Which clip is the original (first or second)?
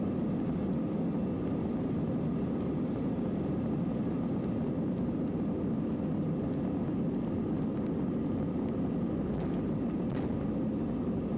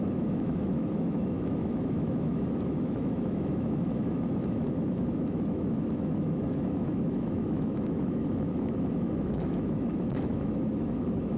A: first